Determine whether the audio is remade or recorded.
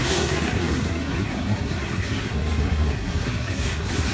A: remade